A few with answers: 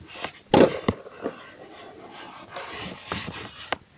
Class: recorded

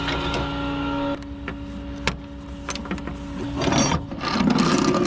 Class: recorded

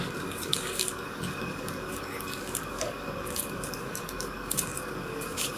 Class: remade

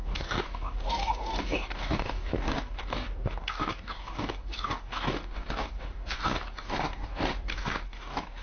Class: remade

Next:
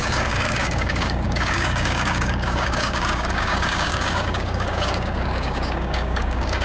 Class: remade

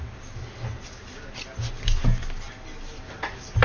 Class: recorded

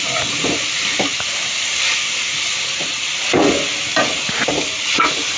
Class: recorded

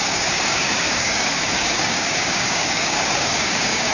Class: remade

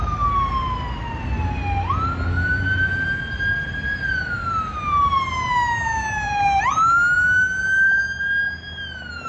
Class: recorded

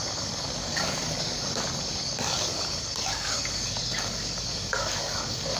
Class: remade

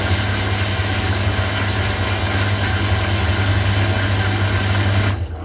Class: recorded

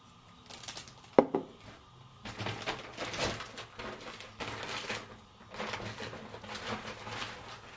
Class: recorded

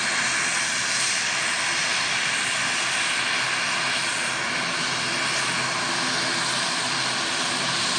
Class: recorded